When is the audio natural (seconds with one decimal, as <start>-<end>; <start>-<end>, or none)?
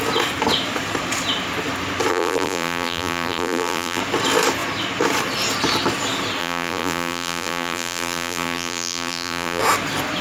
0.0-2.1; 4.0-6.4; 9.6-10.2